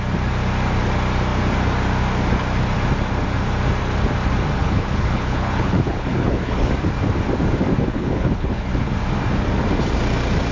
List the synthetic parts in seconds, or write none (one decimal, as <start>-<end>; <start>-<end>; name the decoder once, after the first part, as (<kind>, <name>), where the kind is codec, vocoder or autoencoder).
4.6-6.7 (codec, HILCodec); 7.9-8.7